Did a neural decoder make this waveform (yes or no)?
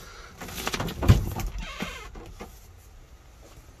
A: no